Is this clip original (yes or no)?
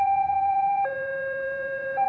no